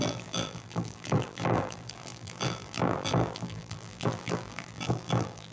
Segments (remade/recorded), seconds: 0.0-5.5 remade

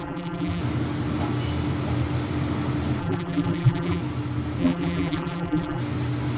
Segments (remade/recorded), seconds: 0.0-0.6 remade; 0.6-3.0 recorded; 3.0-4.0 remade; 4.0-4.6 recorded; 4.6-5.8 remade; 5.8-6.4 recorded